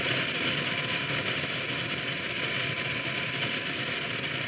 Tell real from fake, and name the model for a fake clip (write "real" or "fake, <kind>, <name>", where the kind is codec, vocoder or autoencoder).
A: real